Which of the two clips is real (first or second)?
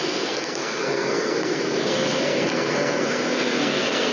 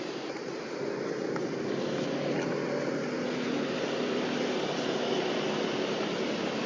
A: second